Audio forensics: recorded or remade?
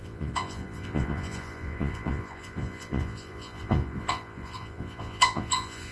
remade